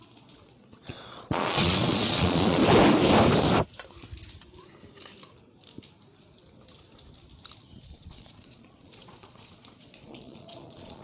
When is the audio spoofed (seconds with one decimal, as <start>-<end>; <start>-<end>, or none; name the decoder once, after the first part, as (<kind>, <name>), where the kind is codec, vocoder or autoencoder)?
0.0-2.6 (vocoder, Vocos); 7.8-11.0